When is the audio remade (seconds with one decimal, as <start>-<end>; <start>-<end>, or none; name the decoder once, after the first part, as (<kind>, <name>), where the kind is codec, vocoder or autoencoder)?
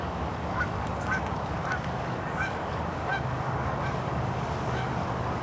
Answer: 0.0-5.4 (codec, DAC)